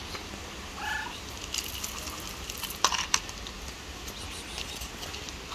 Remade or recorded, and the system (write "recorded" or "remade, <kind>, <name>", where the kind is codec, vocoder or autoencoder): recorded